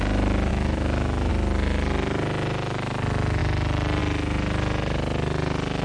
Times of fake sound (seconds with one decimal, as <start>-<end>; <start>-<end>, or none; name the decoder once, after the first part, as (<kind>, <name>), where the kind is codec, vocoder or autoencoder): 0.5-1.3 (autoencoder, DAC-VAE)